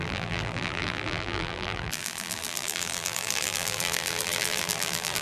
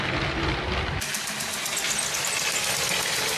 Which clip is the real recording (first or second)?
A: second